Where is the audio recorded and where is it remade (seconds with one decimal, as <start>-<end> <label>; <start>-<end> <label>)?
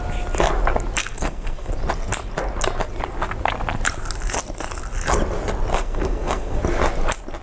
0.0-1.0 recorded; 1.0-1.7 remade; 1.7-5.7 recorded; 5.7-6.6 remade; 6.6-7.4 recorded